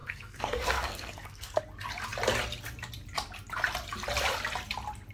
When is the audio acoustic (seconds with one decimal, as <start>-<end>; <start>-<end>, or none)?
1.6-5.1